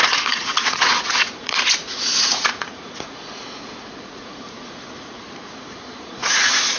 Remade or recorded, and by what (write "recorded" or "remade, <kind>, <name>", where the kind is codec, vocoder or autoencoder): remade, vocoder, Vocos